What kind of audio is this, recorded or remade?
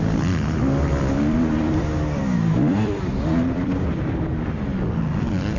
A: remade